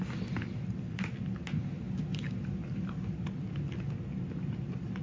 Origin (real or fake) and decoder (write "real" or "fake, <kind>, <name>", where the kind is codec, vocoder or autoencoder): real